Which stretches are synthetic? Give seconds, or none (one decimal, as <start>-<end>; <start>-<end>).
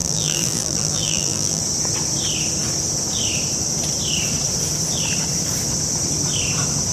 0.0-1.6